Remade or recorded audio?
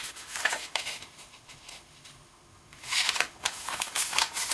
remade